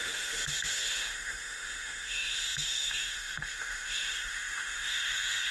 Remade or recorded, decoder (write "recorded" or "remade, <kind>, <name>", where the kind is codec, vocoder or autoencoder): remade, autoencoder, DAC-VAE